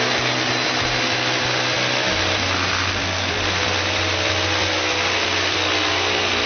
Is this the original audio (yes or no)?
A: yes